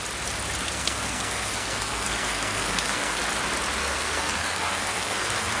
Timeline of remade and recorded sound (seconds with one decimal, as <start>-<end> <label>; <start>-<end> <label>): 0.0-0.6 recorded; 0.6-3.2 remade; 3.2-3.8 recorded; 3.8-5.6 remade